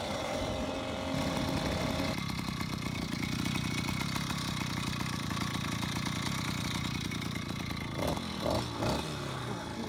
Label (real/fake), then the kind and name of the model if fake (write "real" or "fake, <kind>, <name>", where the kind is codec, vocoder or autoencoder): real